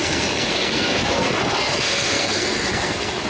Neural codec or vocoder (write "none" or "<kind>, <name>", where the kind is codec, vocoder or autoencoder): codec, SNAC